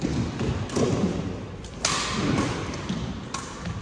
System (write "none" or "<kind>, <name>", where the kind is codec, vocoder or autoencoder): none